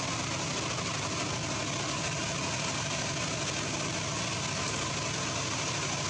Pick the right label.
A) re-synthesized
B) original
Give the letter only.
B